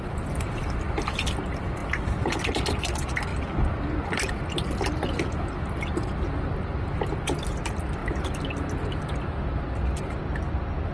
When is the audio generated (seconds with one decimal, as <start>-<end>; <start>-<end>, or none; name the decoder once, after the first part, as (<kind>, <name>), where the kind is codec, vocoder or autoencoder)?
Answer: none